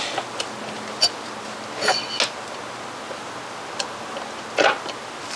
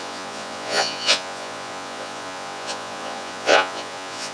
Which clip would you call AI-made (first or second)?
second